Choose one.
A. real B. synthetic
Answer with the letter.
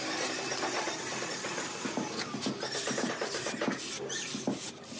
A